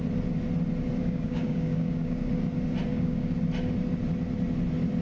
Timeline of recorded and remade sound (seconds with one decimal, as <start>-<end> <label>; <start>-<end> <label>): 0.0-1.0 recorded; 1.0-2.3 remade; 2.3-2.9 recorded; 2.9-3.4 remade; 3.4-5.0 recorded